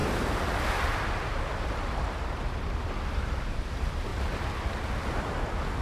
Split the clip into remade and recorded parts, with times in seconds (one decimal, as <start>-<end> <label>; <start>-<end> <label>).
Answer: 0.0-3.1 recorded; 3.1-4.1 remade; 4.1-5.8 recorded